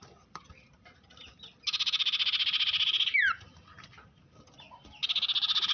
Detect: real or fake real